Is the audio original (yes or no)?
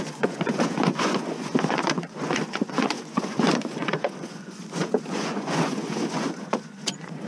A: no